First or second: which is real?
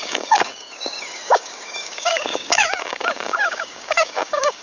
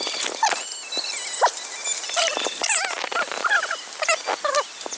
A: second